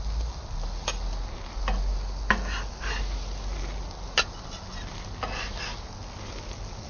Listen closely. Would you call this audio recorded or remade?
recorded